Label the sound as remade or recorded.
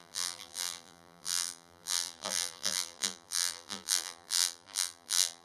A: remade